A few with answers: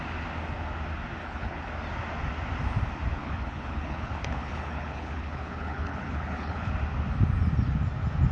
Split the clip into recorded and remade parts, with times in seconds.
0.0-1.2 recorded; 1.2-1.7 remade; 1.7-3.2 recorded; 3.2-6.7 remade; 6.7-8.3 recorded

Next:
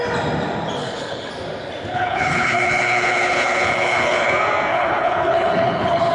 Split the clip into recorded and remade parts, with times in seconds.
0.0-0.8 recorded; 0.8-1.3 remade; 1.3-1.9 recorded; 1.9-4.3 remade; 4.3-4.7 recorded; 4.7-6.1 remade

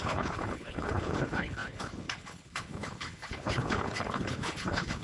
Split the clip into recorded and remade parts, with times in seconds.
0.0-5.0 remade

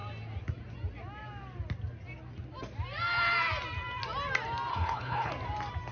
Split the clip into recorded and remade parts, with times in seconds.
0.0-4.7 recorded; 4.7-5.3 remade; 5.3-5.9 recorded